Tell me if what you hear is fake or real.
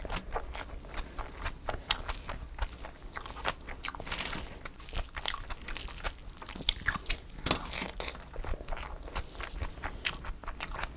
real